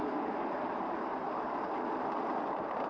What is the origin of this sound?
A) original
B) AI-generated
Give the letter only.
A